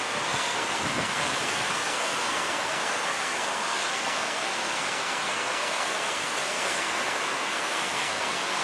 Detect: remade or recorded remade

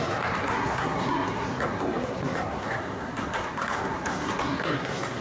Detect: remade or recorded remade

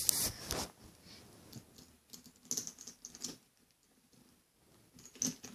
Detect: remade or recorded recorded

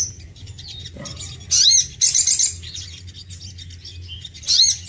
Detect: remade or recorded recorded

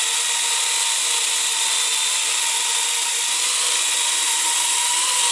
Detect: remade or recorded recorded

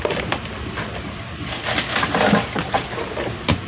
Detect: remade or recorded recorded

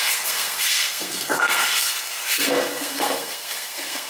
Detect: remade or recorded remade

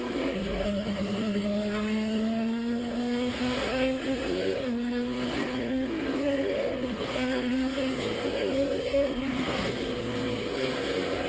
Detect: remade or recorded remade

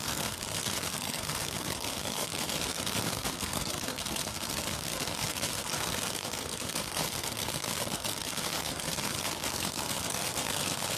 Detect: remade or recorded remade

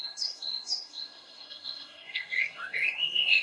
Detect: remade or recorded remade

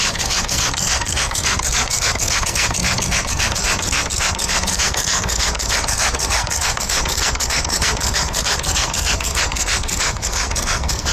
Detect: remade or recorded remade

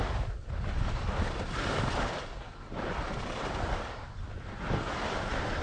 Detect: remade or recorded recorded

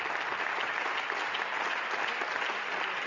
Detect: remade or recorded recorded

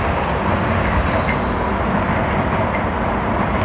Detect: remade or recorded recorded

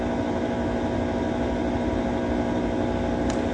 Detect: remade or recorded recorded